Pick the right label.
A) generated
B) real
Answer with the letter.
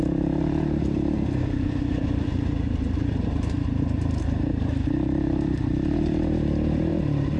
A